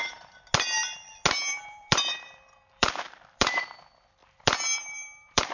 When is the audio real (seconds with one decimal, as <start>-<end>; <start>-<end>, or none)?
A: 0.0-1.5; 3.6-4.2